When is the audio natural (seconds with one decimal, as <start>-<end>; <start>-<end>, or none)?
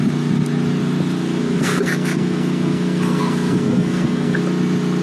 0.0-1.4; 4.4-5.0